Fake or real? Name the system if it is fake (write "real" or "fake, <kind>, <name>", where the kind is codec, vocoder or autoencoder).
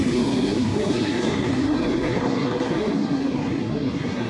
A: fake, codec, SNAC